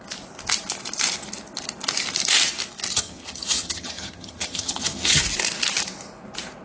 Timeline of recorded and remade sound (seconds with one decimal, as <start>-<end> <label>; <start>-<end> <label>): 0.0-2.9 recorded; 2.9-5.2 remade; 5.2-6.6 recorded